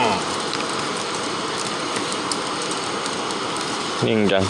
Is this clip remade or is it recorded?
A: recorded